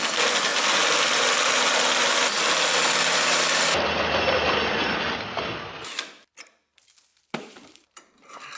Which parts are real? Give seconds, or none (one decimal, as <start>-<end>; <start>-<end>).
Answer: 0.0-7.1; 8.1-8.6